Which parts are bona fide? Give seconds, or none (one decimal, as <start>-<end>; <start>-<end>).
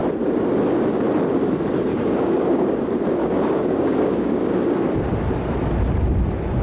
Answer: 0.0-1.9; 2.8-3.2; 4.6-6.6